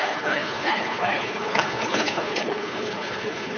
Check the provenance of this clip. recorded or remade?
remade